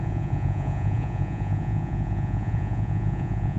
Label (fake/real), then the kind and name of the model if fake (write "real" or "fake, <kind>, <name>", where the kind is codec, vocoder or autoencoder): fake, vocoder, Vocos